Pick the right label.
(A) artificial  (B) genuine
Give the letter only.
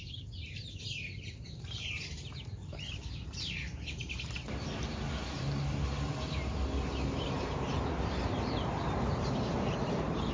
A